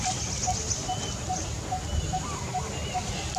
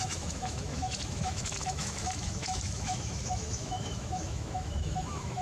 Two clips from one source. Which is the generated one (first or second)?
second